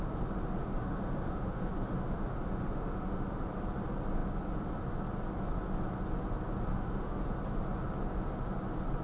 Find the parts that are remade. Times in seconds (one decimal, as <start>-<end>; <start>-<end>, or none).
0.6-3.4; 6.7-7.2